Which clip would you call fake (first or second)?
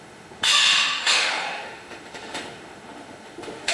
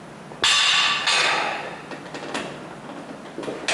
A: first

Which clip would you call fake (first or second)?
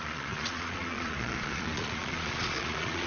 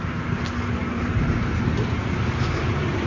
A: first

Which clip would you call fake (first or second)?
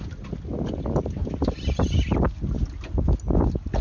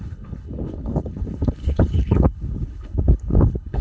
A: second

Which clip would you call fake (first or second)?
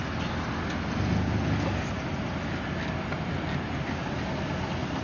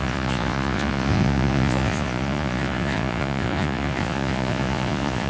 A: second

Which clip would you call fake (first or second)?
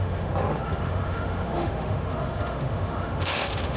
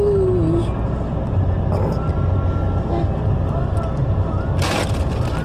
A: first